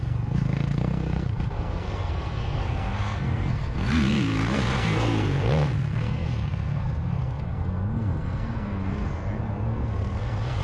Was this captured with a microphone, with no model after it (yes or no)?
no